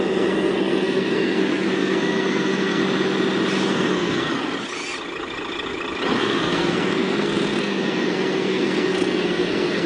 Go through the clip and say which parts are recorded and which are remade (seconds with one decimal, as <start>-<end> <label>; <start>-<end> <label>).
0.0-2.8 remade; 2.8-3.7 recorded; 3.7-4.3 remade; 4.3-6.2 recorded; 6.2-9.9 remade